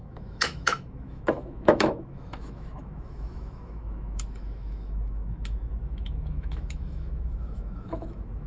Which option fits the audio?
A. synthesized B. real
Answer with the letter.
A